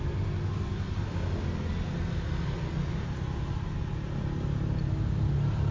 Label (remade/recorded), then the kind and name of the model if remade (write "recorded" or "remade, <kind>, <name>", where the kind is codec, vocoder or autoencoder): recorded